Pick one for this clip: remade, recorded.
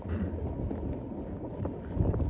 remade